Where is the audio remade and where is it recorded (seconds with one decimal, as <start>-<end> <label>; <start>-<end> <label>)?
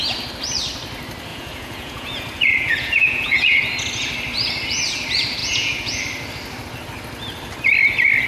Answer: 0.0-1.3 recorded; 1.3-3.6 remade; 3.6-5.4 recorded; 5.4-6.0 remade; 6.0-8.3 recorded